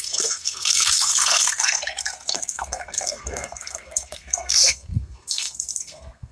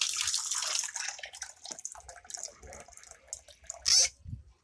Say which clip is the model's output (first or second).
first